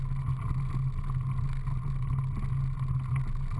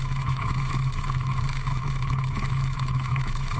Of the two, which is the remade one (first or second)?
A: second